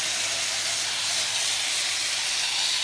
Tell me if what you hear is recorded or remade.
recorded